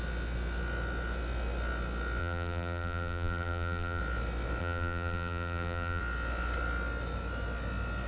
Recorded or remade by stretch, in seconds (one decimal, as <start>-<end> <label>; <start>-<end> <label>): 0.0-2.2 recorded; 2.2-4.0 remade; 4.0-4.6 recorded; 4.6-6.0 remade; 6.0-8.1 recorded